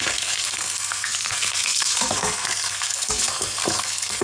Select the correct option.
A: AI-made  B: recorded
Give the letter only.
A